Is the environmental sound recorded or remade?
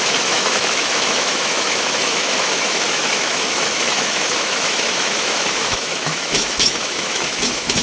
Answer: remade